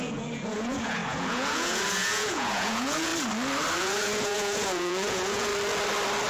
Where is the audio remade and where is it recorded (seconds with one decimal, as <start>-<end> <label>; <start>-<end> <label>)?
0.0-3.1 remade; 3.1-3.8 recorded; 3.8-5.5 remade; 5.5-6.3 recorded